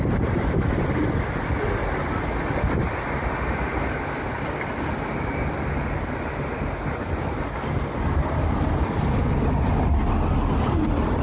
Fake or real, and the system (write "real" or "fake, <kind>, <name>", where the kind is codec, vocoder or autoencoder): real